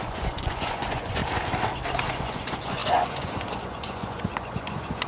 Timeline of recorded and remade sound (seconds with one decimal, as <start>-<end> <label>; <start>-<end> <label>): 0.0-1.2 remade; 1.2-2.1 recorded; 2.1-5.1 remade